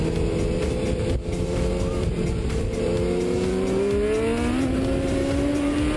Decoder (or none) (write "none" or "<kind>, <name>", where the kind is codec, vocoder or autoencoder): none